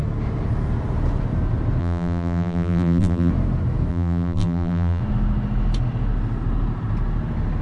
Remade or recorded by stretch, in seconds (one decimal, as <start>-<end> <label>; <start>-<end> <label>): 0.0-1.8 recorded; 1.8-3.3 remade; 3.3-3.9 recorded; 3.9-5.0 remade; 5.0-7.6 recorded